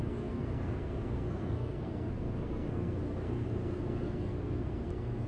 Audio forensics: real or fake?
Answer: fake